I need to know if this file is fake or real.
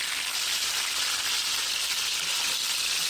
real